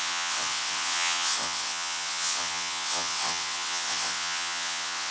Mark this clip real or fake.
fake